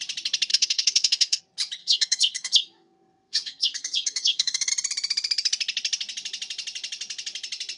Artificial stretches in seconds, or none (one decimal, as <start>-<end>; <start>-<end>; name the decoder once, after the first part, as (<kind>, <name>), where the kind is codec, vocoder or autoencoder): 0.5-1.4 (codec, SNAC); 1.8-4.7